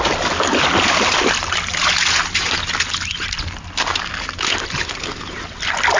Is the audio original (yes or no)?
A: yes